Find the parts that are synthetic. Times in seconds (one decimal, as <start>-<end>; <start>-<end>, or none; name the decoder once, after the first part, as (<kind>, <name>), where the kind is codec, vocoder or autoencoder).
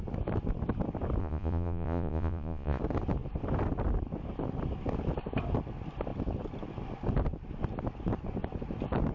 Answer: 1.2-2.8 (vocoder, Vocos)